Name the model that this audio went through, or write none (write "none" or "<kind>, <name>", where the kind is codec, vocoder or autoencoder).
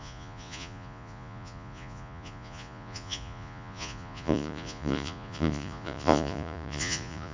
vocoder, Vocos